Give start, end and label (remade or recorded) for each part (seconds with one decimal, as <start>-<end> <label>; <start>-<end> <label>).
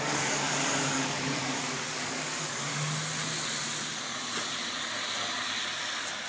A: 0.0-2.7 remade; 2.7-6.3 recorded